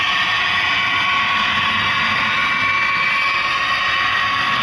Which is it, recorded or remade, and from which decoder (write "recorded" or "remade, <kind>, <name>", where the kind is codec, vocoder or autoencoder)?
recorded